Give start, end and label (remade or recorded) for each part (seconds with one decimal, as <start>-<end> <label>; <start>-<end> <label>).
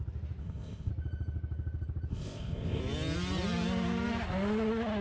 0.0-0.4 recorded; 0.4-0.9 remade; 0.9-2.1 recorded; 2.1-2.8 remade; 2.8-5.0 recorded